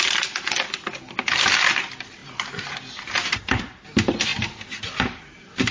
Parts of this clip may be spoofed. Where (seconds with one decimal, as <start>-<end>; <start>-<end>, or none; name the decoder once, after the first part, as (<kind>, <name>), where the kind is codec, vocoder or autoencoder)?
none